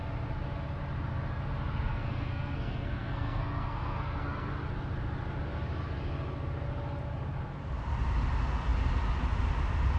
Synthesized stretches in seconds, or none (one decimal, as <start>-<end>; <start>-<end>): 1.9-4.5